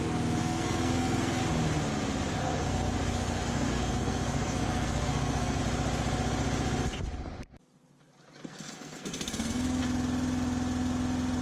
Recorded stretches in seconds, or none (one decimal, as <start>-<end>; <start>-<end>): 0.0-0.4; 1.4-2.4; 5.6-8.4; 9.8-11.4